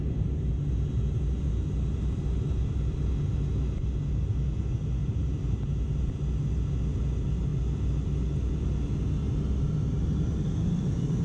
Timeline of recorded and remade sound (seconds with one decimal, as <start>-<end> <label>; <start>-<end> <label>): 0.0-5.0 recorded; 5.0-6.1 remade; 6.1-11.2 recorded